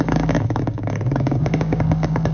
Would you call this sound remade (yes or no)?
yes